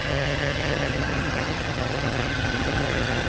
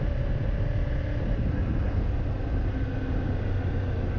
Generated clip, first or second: first